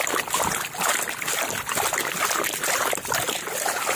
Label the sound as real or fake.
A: real